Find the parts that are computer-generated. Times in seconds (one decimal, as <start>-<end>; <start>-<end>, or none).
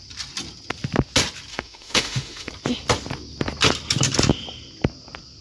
1.5-2.5